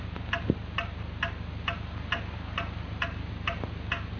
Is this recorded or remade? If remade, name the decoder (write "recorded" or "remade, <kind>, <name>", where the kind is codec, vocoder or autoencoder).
recorded